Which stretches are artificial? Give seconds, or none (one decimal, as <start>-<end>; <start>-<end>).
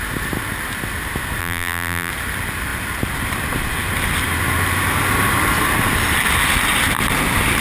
1.4-2.1